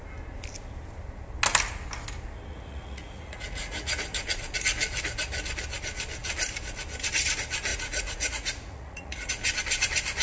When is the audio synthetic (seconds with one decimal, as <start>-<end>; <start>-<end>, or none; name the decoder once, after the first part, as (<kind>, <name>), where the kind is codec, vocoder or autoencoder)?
2.5-4.0 (vocoder, Vocos); 7.7-9.3